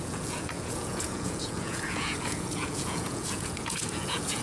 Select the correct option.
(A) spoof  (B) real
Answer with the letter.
A